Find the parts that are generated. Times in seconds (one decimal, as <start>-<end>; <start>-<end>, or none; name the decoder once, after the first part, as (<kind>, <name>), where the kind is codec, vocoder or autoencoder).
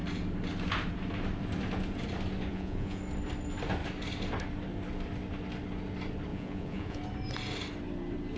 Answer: 2.5-3.0 (vocoder, Vocos); 6.3-7.0